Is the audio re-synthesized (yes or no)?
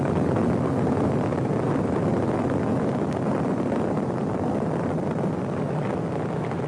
no